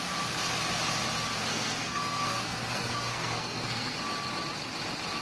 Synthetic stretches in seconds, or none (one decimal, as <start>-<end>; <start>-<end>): 1.5-4.0